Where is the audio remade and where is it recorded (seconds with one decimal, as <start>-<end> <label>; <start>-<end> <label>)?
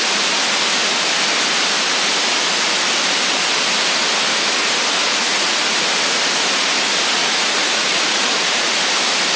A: 0.0-5.0 recorded; 5.0-5.6 remade; 5.6-7.2 recorded; 7.2-8.8 remade; 8.8-9.4 recorded